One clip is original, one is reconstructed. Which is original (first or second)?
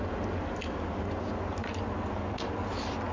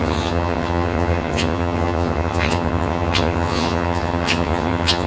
first